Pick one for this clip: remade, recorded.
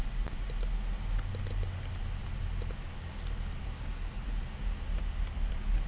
recorded